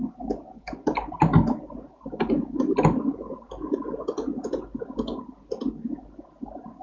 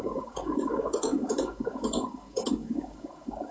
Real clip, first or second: first